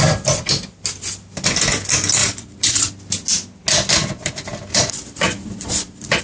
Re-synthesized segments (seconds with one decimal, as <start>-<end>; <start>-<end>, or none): 2.2-2.9; 4.7-6.2